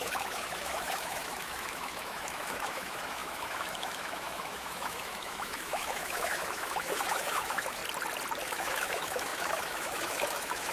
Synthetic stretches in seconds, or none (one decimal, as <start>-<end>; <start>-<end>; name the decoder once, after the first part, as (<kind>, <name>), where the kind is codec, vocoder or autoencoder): 0.0-7.8 (autoencoder, DAC-VAE); 8.4-10.7